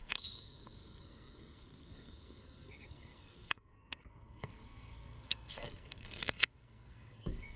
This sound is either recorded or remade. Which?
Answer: remade